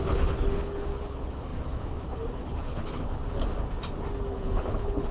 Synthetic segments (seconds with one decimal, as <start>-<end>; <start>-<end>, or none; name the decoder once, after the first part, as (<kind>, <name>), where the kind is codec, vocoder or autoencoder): 0.0-3.2 (codec, HILCodec); 4.3-5.1